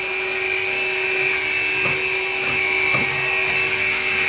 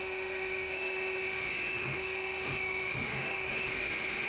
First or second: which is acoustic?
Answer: first